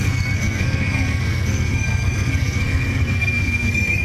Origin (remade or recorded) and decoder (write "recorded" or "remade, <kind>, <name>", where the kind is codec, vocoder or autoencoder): remade, codec, SNAC